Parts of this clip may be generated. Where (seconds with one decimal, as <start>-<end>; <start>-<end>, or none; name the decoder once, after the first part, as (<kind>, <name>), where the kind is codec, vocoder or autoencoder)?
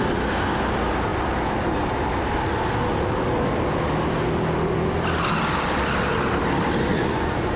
6.9-7.6 (vocoder, Vocos)